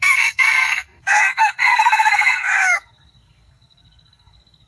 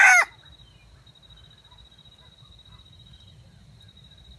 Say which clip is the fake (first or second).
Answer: first